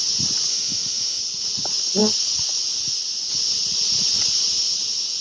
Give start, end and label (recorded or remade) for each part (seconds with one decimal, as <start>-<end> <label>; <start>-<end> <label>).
0.0-0.5 recorded; 0.5-1.2 remade; 1.2-5.2 recorded